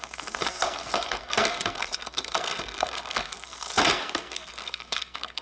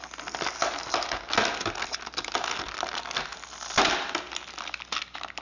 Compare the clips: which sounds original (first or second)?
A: second